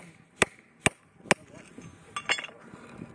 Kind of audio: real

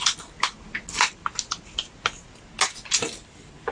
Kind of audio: real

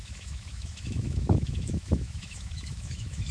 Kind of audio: fake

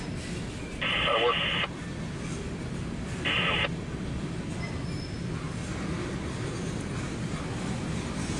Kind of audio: real